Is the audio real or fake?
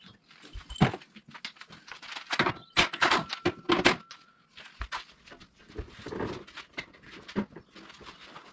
real